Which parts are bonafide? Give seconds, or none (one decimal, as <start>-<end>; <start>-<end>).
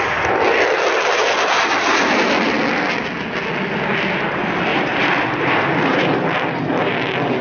0.0-4.7; 6.0-7.4